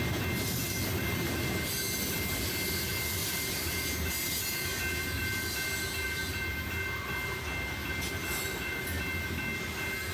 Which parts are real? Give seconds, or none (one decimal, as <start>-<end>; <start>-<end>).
0.0-0.6; 1.5-3.2; 4.4-10.1

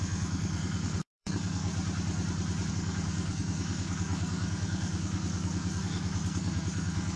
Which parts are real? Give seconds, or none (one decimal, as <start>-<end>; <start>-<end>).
1.7-2.7

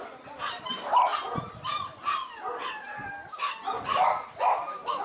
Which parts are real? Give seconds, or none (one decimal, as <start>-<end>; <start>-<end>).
0.0-5.0

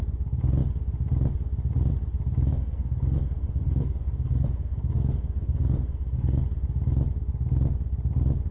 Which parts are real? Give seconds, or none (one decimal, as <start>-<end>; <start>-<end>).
0.0-2.5; 6.4-8.5

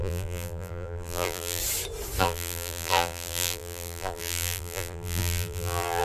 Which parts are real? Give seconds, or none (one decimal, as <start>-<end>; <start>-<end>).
1.6-2.2

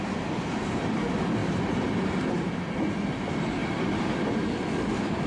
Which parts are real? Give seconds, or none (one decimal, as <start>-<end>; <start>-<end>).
0.0-1.4; 3.1-3.6; 4.2-5.3